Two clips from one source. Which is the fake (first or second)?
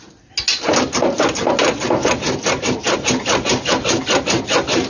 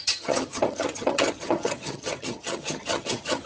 second